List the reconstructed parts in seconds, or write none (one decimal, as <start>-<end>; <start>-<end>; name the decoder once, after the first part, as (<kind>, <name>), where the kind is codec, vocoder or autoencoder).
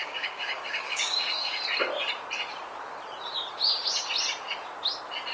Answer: 0.0-1.6 (codec, DAC)